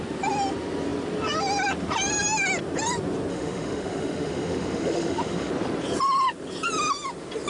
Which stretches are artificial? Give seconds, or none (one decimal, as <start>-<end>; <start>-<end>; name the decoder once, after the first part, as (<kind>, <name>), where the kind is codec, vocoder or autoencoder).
3.3-5.5 (autoencoder, DAC-VAE)